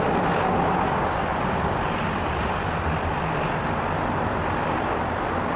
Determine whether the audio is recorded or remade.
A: recorded